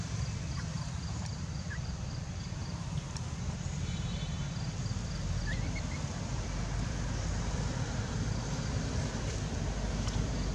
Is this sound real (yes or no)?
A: no